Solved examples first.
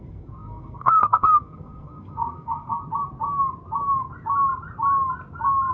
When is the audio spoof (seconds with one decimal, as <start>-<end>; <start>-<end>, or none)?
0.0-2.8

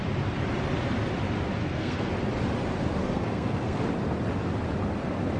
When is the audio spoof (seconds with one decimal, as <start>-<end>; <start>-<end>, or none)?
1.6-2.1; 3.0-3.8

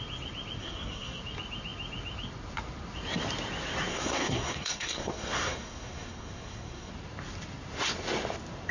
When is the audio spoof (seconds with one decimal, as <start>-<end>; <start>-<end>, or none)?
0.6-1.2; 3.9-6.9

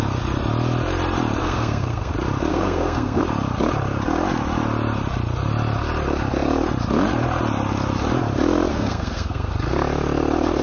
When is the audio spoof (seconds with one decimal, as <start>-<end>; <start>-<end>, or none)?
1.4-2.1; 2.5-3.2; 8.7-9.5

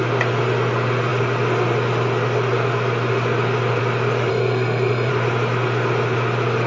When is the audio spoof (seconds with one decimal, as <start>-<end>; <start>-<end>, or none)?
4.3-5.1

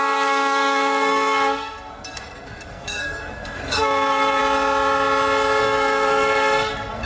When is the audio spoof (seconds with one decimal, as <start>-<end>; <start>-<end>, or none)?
0.0-4.4; 5.6-7.1

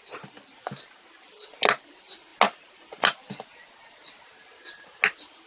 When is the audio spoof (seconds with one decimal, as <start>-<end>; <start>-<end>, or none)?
none

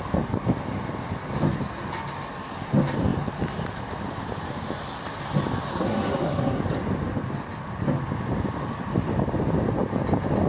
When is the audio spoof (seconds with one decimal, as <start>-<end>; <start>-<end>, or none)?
5.7-6.6